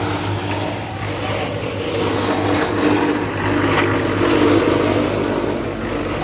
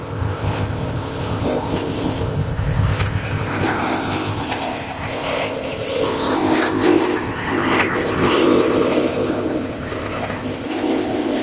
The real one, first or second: first